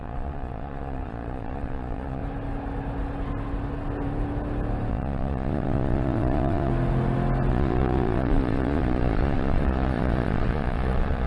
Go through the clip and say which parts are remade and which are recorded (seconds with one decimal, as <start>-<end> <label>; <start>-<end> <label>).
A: 0.0-2.2 remade; 2.2-4.9 recorded; 4.9-6.7 remade; 6.7-7.5 recorded; 7.5-11.3 remade